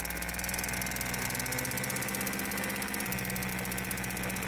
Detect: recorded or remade recorded